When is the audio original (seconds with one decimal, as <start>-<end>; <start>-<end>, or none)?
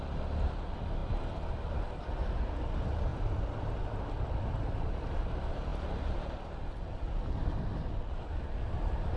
0.0-3.1; 4.0-9.2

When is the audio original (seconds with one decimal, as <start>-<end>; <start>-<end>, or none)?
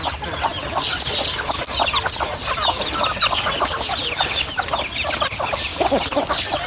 0.0-6.7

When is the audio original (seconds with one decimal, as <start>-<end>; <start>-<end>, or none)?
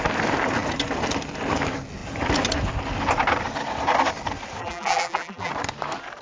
0.0-4.6; 5.5-6.2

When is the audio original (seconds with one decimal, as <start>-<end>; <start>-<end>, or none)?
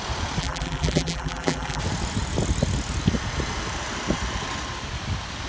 0.0-0.4; 1.8-5.5